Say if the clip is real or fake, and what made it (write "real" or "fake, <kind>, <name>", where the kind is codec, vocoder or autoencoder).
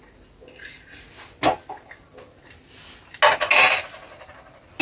real